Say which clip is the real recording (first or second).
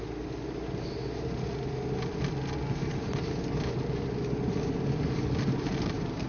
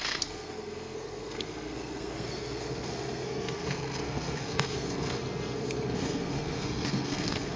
first